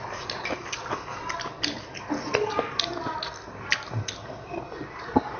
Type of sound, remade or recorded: recorded